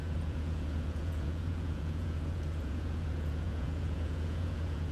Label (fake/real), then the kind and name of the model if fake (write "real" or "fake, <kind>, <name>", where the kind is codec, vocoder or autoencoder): fake, vocoder, Vocos